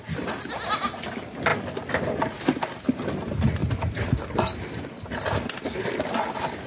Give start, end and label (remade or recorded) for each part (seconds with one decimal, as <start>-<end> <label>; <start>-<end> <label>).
0.0-6.7 recorded